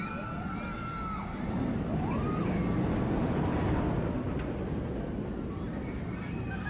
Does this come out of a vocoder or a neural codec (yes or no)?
no